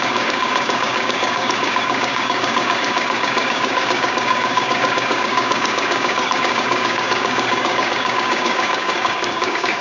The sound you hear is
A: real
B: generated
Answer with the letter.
B